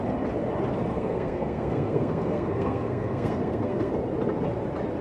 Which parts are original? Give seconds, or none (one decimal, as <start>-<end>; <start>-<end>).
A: 0.0-0.9; 3.9-5.0